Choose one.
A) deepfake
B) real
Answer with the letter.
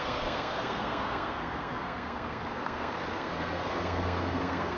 A